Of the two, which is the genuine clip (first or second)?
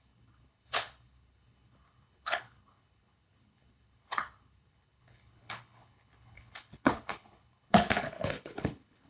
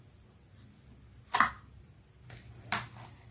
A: second